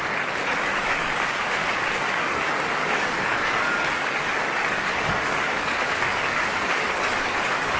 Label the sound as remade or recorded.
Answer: remade